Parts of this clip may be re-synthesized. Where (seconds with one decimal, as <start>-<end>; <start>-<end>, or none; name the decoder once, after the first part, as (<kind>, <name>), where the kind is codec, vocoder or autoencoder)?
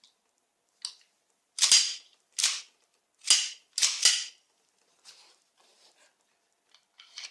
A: none